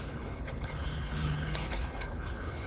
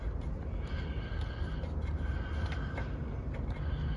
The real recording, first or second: second